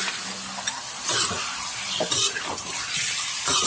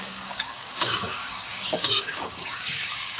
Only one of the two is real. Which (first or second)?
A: first